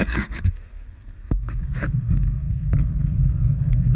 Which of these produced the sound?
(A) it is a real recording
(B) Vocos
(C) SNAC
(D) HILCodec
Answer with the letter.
C